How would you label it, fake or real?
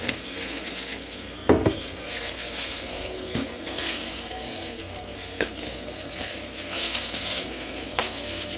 fake